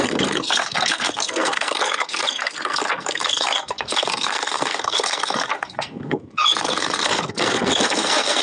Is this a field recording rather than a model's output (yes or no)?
no